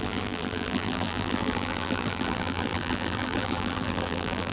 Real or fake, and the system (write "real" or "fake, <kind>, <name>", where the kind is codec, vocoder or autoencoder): fake, vocoder, BigVGAN v2